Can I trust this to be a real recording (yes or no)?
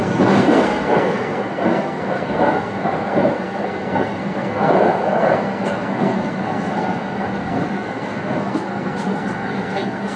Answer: no